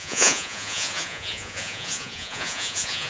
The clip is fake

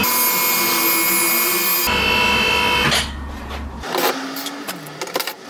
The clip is real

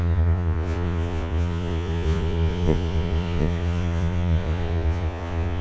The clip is fake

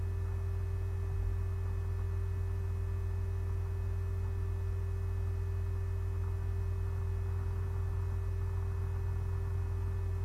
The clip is real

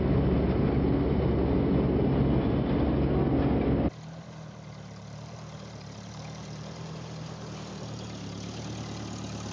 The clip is real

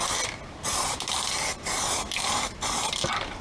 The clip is real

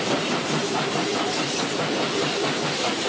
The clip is fake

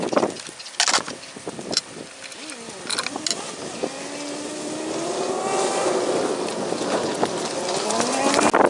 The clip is real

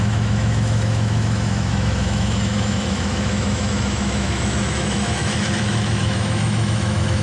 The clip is fake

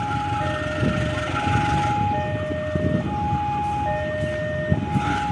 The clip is real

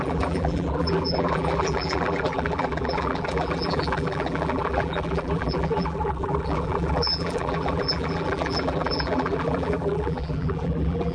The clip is fake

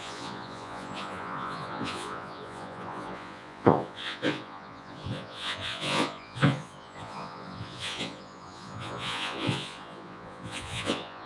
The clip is fake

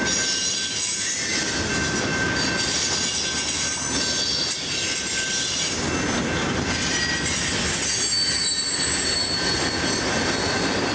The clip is real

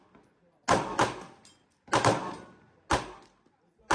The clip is real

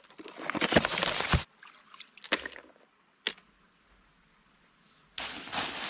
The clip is real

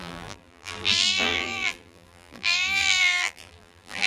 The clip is fake